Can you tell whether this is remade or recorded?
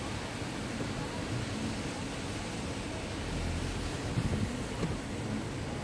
recorded